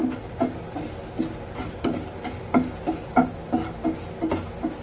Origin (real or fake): real